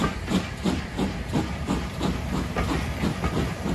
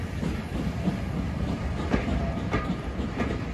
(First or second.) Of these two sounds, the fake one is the second